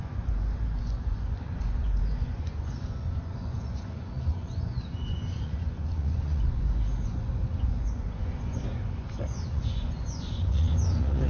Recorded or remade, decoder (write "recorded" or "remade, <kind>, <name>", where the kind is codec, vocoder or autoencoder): remade, vocoder, Vocos